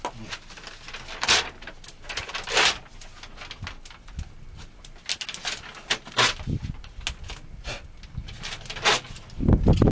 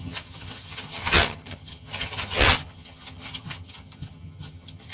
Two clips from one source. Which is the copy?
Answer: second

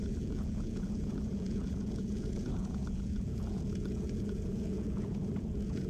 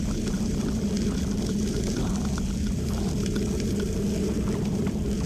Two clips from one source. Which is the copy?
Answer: first